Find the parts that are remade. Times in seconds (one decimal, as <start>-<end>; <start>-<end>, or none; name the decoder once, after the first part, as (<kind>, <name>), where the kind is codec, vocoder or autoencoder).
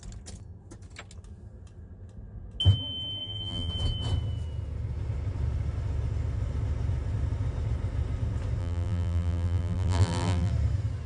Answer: 3.2-3.7 (vocoder, BigVGAN v2); 8.6-10.5